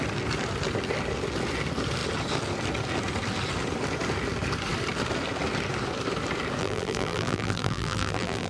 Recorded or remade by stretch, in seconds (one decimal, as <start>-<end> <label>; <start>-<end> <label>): 0.0-6.6 recorded; 6.6-8.5 remade